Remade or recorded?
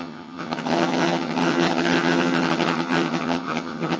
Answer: remade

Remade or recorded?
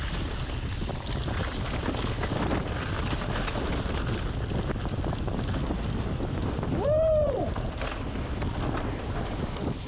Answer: recorded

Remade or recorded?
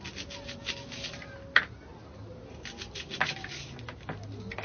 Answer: recorded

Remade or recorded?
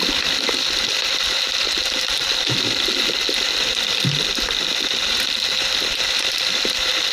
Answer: recorded